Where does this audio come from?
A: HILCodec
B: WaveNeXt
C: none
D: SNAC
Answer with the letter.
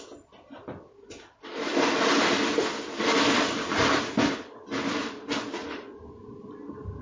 C